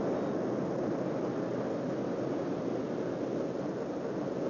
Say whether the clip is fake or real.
real